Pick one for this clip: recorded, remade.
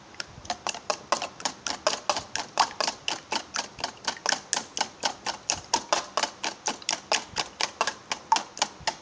recorded